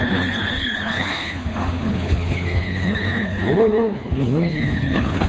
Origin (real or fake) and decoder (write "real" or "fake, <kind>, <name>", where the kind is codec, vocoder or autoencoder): fake, codec, HILCodec